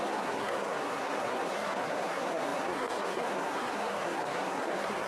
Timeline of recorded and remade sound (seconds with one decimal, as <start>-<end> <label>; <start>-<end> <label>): 0.0-5.1 remade